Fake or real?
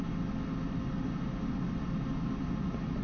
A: real